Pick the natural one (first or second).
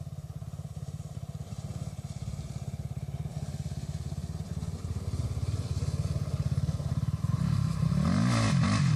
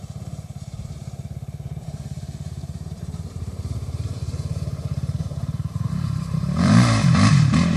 first